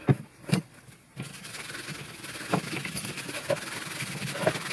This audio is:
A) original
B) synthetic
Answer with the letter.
A